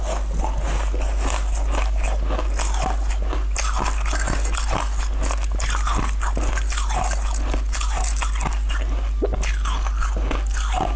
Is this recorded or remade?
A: recorded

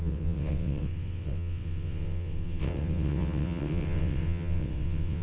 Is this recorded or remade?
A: remade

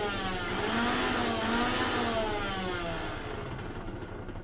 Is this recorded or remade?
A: recorded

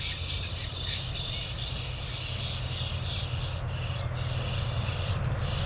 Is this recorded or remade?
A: recorded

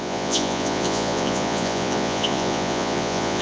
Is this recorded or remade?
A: remade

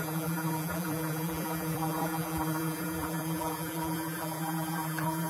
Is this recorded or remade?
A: remade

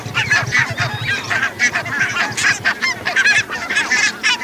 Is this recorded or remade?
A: remade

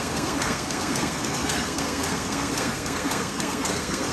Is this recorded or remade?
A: remade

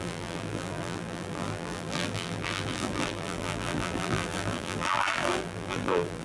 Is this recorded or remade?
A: remade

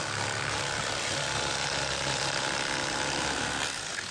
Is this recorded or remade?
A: recorded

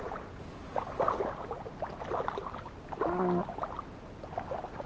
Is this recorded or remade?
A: recorded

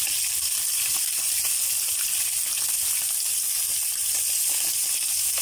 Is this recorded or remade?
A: recorded